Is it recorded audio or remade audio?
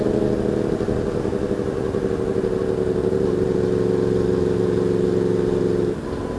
recorded